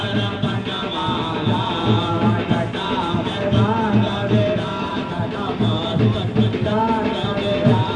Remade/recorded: recorded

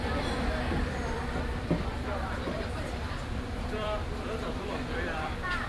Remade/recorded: remade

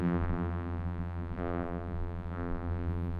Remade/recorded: remade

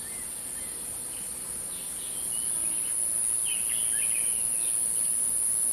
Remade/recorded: recorded